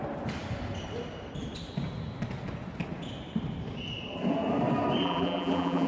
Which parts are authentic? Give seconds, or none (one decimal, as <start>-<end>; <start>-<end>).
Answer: 0.0-5.0